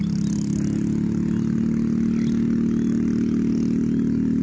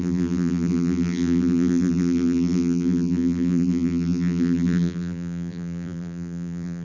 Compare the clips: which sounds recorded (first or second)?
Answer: first